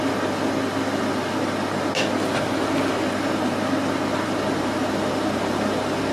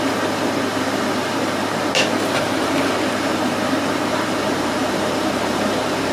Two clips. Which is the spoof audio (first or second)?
second